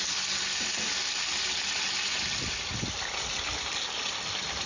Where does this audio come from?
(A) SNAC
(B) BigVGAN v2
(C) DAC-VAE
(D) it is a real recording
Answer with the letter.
D